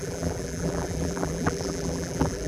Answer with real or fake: fake